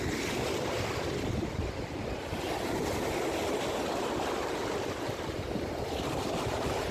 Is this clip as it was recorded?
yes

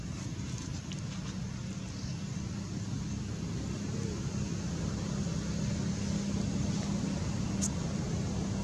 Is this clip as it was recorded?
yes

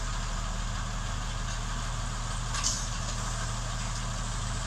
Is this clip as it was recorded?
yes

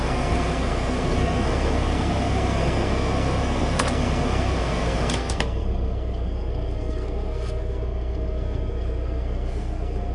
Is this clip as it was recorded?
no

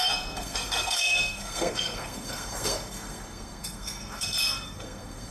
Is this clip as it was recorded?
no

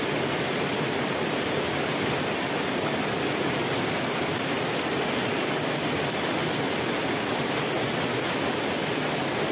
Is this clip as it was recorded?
yes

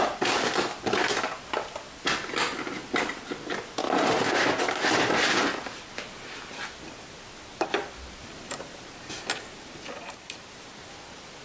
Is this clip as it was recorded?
yes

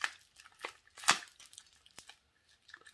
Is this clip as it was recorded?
yes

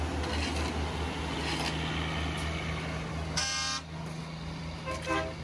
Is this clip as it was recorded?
yes